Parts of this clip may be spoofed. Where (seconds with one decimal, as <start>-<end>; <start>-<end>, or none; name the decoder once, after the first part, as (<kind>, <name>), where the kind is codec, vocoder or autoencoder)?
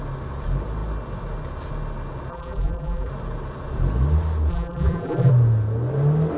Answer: 2.3-3.1 (vocoder, BigVGAN v2); 4.5-5.3